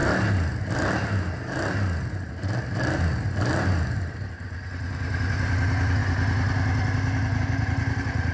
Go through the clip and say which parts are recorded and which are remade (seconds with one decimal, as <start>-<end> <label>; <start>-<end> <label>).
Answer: 0.0-8.3 recorded